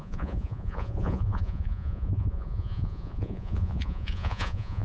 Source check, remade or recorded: remade